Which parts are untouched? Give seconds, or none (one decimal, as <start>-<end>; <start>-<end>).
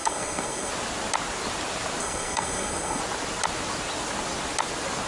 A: 0.7-2.0; 3.0-5.1